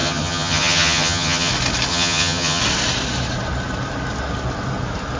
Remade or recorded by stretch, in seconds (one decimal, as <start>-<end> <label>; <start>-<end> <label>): 0.0-1.5 remade; 1.5-1.9 recorded; 1.9-2.6 remade; 2.6-5.2 recorded